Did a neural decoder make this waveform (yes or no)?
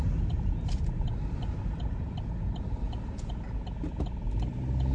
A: no